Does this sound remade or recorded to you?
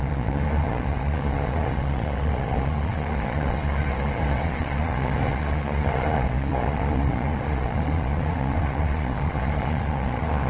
remade